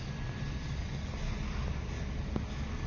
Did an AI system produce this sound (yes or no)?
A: no